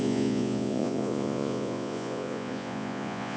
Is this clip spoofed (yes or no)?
yes